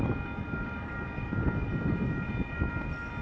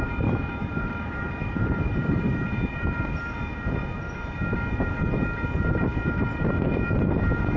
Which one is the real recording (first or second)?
first